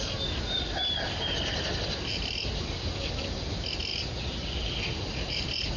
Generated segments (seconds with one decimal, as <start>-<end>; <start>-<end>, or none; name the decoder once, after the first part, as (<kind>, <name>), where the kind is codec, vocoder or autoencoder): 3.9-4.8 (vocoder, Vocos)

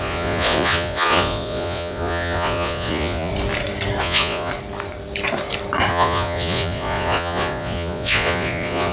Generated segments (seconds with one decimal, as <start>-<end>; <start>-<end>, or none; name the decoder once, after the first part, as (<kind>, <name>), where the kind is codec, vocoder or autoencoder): 0.0-3.3 (vocoder, Vocos); 4.0-4.5; 5.9-8.9

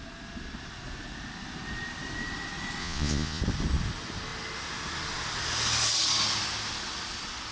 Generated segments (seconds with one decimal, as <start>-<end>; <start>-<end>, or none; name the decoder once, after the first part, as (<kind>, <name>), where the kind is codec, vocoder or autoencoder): 2.8-3.4 (vocoder, Vocos)

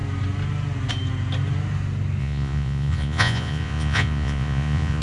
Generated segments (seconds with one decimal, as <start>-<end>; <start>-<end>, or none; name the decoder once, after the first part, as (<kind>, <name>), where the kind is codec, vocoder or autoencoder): 2.2-5.0 (vocoder, Vocos)

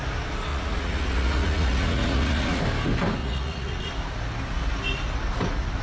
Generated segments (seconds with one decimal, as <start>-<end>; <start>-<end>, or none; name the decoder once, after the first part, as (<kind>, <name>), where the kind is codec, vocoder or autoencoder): 0.5-2.6 (vocoder, Vocos); 3.2-3.9

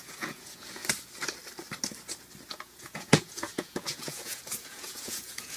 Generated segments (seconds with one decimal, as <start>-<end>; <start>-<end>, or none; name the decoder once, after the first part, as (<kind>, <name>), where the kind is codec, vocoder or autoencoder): 0.0-0.8 (vocoder, Vocos); 2.5-5.6